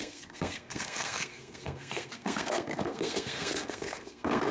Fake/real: fake